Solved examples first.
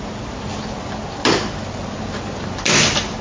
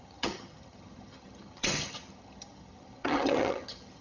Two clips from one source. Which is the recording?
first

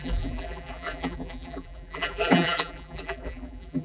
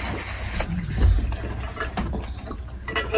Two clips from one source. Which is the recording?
second